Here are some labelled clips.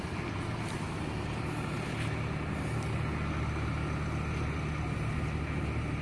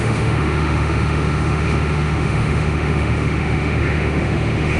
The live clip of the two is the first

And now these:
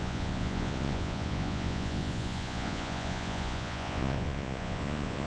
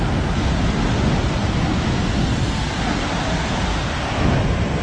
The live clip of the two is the second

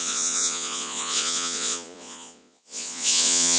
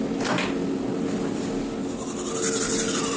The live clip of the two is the second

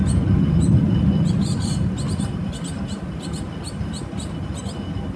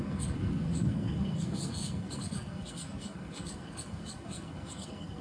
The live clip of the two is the first